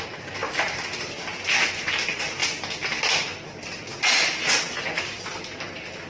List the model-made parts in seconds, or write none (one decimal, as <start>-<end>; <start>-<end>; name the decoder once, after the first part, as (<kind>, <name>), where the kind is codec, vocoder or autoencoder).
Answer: 0.4-1.1 (vocoder, BigVGAN v2)